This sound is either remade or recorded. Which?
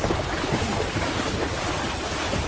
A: remade